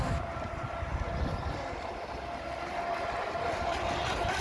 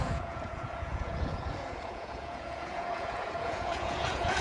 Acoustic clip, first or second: first